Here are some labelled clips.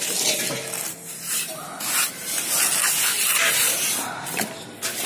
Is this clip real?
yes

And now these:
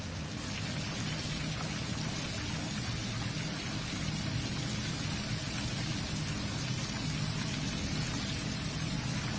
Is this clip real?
yes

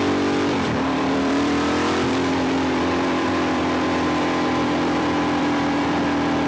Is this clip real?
no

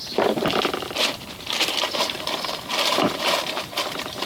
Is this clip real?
no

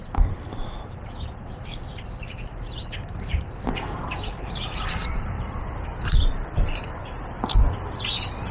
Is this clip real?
no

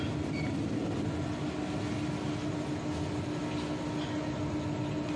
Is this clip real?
yes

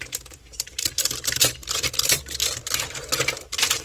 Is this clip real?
no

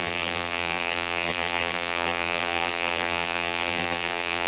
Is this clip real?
no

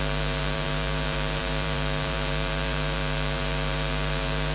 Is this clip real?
no